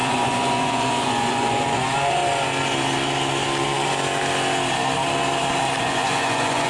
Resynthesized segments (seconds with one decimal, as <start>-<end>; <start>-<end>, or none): 0.0-2.2; 5.8-6.7

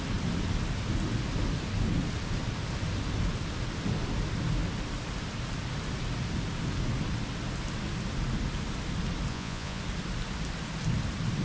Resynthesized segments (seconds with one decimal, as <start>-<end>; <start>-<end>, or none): 9.3-9.8

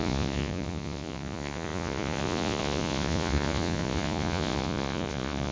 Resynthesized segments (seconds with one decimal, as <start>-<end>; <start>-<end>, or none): 0.0-5.5